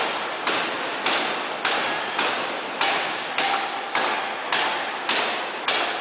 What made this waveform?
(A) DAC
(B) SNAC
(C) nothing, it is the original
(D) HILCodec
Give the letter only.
C